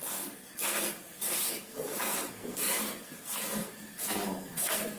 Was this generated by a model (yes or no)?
yes